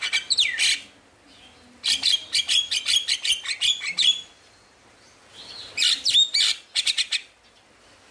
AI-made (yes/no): no